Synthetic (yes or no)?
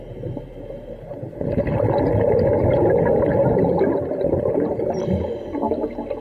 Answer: no